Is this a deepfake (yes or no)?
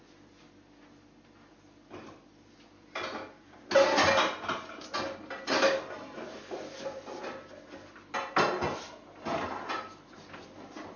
no